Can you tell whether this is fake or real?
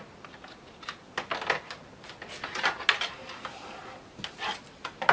real